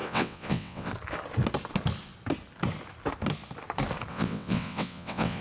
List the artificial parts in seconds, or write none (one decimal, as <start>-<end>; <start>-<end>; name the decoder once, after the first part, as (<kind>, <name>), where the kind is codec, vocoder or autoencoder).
0.0-0.9 (vocoder, WaveNeXt); 4.1-5.4